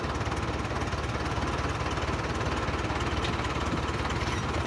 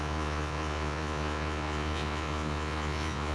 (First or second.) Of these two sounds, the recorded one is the first